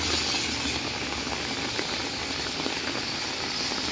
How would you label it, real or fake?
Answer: real